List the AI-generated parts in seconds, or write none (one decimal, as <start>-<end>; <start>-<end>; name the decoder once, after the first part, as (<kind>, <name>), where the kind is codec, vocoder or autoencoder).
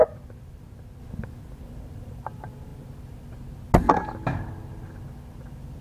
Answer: none